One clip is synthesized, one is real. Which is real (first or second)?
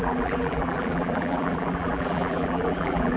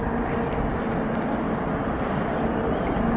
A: second